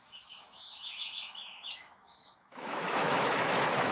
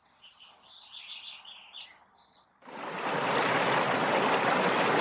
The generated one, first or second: first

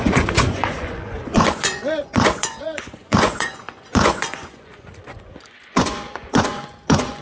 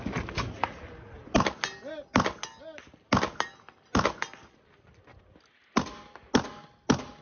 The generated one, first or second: first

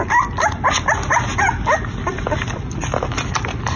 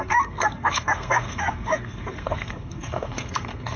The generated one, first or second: second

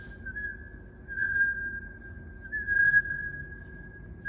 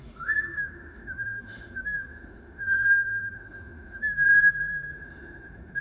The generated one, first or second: second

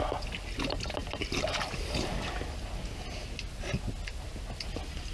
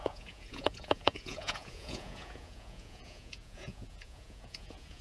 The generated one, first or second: second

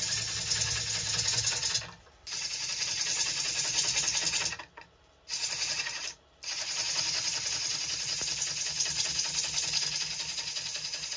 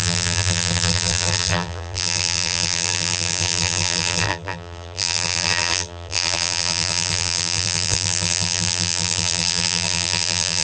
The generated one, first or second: second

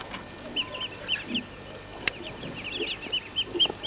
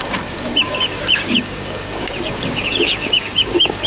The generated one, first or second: second